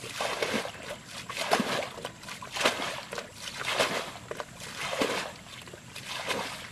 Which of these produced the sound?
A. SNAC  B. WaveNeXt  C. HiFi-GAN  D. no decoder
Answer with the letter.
D